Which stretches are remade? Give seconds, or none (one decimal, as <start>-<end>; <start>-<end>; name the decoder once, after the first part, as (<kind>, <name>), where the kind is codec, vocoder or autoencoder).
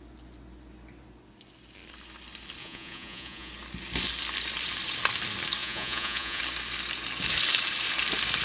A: 2.6-3.5 (vocoder, Vocos); 5.6-6.4